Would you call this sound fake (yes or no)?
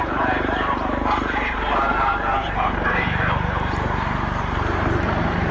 yes